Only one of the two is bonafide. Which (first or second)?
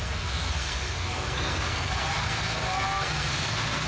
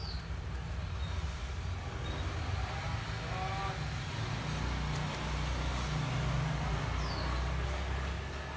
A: second